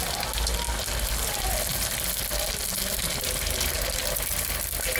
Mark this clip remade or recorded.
recorded